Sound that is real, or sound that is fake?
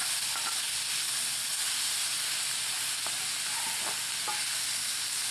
real